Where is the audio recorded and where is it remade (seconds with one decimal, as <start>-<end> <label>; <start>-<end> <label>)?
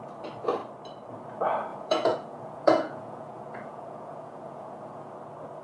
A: 0.0-1.7 recorded; 1.7-5.1 remade; 5.1-5.6 recorded